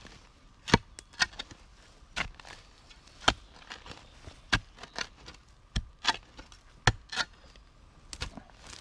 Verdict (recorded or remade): recorded